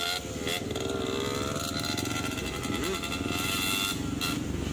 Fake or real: real